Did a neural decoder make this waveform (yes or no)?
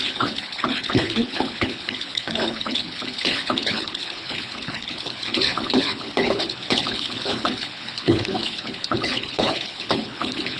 yes